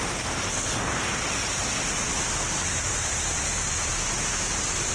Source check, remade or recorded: recorded